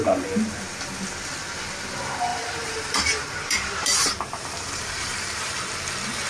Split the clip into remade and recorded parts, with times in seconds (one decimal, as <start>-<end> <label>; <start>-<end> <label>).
0.0-2.3 recorded; 2.3-5.8 remade; 5.8-6.3 recorded